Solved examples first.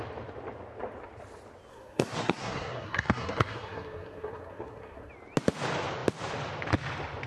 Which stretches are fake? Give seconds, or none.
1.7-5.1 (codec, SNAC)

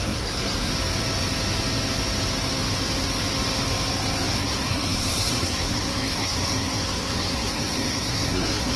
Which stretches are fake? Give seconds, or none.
0.0-0.7 (codec, SNAC); 4.3-8.8

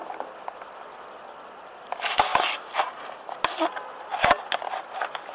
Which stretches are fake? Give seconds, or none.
none

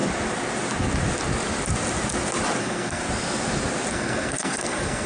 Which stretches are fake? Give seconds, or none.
2.6-3.0 (codec, SNAC); 3.9-5.1

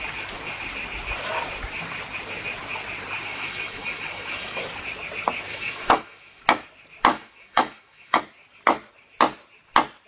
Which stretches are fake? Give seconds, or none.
3.3-4.6 (autoencoder, DAC-VAE); 5.5-6.4; 7.1-8.2

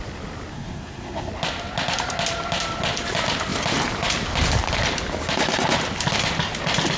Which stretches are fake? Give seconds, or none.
0.5-1.3 (codec, SNAC)

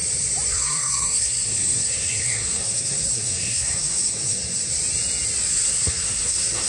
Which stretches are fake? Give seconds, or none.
0.5-4.7 (codec, SNAC); 5.5-6.7